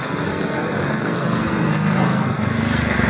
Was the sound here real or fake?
fake